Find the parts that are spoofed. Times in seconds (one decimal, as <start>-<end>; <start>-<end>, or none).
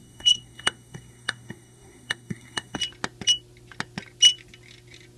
0.0-2.8